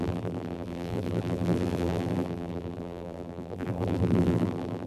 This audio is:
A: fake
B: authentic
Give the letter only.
A